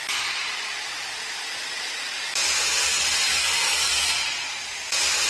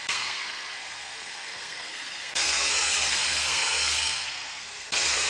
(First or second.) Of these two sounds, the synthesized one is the second